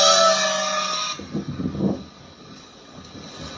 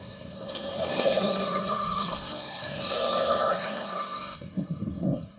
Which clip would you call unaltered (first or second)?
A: first